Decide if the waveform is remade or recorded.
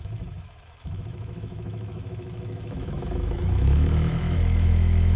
remade